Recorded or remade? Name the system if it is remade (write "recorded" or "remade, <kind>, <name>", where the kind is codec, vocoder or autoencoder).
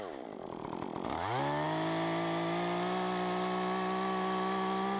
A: recorded